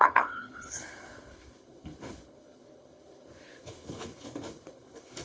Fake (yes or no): yes